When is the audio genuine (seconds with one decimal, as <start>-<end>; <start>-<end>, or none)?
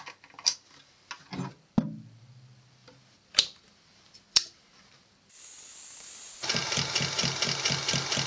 0.0-2.8; 5.1-8.3